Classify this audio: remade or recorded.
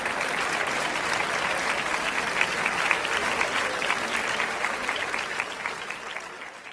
recorded